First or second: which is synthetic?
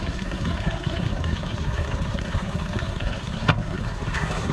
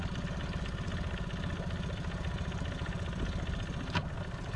first